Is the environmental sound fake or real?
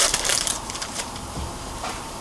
fake